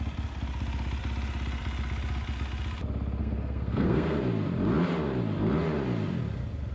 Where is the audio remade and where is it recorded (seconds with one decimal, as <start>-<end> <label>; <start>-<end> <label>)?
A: 0.0-3.2 recorded; 3.2-4.2 remade; 4.2-6.7 recorded